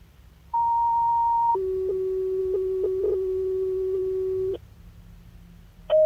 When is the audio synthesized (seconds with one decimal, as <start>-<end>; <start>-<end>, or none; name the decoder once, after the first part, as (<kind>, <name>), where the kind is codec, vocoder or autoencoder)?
0.0-1.5 (vocoder, BigVGAN v2); 2.4-4.0; 4.5-6.1